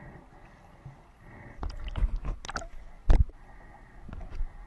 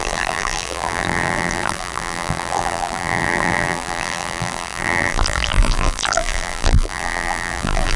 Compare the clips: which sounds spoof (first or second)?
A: second